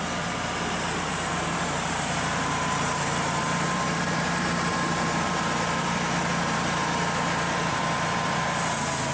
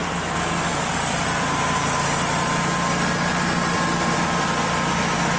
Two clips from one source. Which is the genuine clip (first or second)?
second